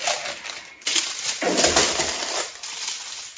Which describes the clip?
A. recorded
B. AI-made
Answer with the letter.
A